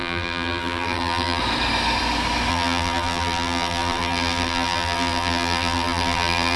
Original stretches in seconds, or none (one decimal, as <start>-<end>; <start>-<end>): 1.4-2.5